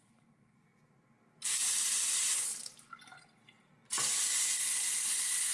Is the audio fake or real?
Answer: real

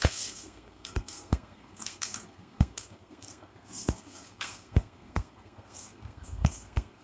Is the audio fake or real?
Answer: fake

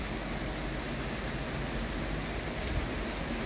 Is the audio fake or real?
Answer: real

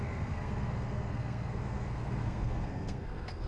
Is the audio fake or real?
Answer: fake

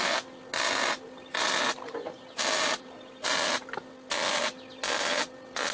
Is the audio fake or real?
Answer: real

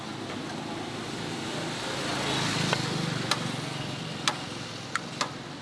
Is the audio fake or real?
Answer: real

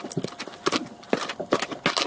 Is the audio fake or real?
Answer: real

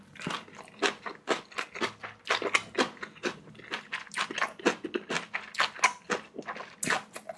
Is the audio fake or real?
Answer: real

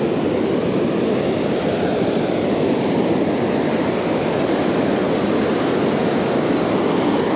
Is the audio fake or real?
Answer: real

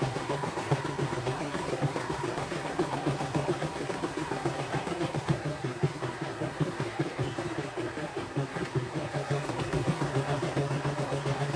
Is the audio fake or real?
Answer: fake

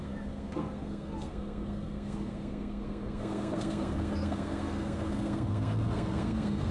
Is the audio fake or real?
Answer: fake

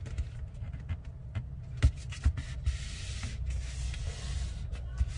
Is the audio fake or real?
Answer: real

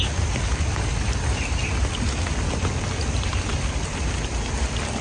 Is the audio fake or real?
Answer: real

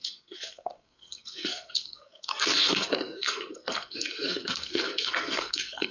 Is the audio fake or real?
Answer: fake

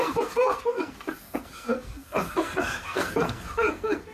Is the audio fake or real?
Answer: fake